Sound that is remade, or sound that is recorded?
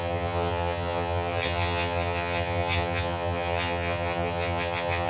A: remade